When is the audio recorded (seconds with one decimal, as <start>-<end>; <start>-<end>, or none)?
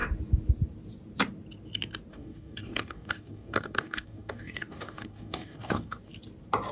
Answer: 0.0-2.1; 6.1-6.7